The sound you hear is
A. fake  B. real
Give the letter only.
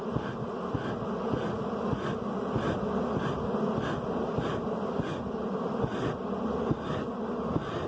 B